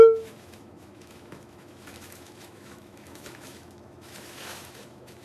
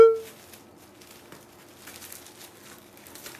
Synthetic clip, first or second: first